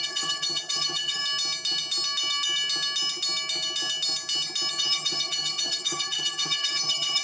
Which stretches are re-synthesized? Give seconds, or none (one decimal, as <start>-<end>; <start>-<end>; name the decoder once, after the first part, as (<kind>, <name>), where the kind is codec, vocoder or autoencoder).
0.0-1.2 (vocoder, HiFi-GAN); 4.7-7.2